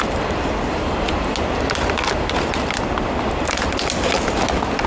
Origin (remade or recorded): recorded